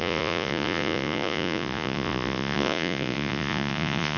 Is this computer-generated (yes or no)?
yes